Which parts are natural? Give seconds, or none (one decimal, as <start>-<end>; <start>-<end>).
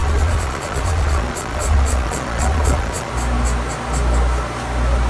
3.1-5.1